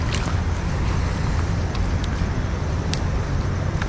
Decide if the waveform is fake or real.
real